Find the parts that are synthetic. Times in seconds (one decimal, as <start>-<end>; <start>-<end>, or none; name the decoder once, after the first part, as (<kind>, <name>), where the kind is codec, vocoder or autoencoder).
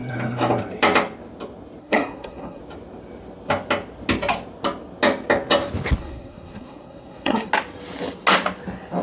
1.8-2.6 (codec, SNAC); 6.0-7.5